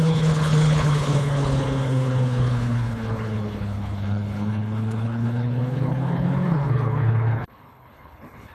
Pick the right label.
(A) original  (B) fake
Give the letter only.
B